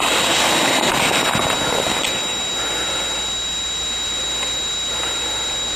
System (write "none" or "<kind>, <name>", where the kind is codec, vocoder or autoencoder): none